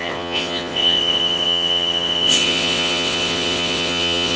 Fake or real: fake